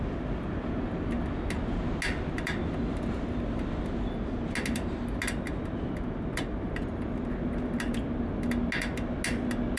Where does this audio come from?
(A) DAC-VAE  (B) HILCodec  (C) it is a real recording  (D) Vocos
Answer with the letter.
C